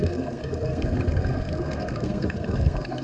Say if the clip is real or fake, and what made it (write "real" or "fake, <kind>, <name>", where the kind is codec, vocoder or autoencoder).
fake, codec, SNAC